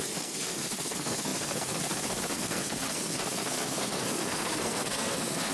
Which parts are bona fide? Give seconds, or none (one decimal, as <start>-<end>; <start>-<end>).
none